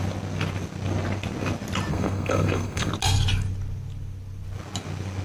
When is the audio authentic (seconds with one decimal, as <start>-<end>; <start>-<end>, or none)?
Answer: 0.0-1.9; 2.9-5.2